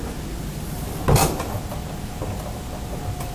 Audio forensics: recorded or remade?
recorded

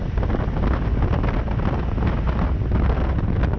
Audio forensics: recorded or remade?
recorded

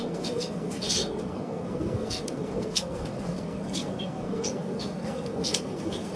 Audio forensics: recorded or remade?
remade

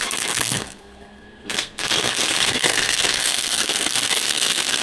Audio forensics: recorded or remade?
remade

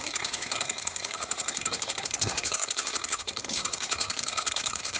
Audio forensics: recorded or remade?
remade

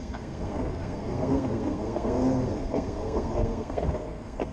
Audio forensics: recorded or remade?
remade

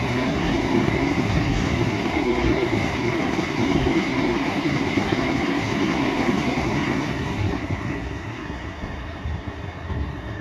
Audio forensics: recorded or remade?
remade